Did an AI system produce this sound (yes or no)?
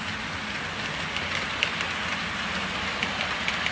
no